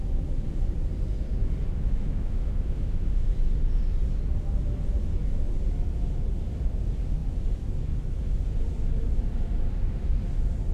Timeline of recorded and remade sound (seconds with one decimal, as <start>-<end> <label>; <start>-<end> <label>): 0.0-1.7 recorded; 1.7-3.3 remade; 3.3-10.7 recorded